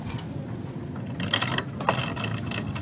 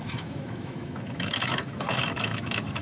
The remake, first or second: second